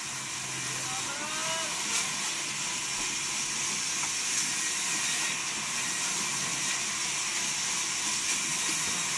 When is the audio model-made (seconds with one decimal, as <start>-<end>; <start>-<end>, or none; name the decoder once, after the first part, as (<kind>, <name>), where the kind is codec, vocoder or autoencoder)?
none